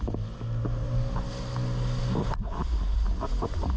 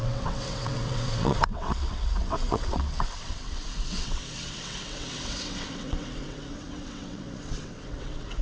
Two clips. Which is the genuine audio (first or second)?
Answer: first